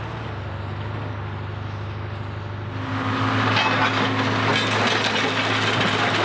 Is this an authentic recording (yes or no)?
yes